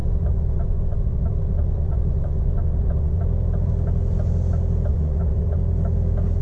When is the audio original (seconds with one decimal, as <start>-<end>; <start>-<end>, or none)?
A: 3.2-4.9; 5.6-6.4